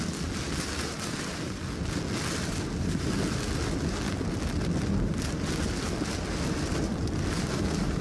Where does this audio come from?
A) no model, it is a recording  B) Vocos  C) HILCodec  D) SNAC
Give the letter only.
A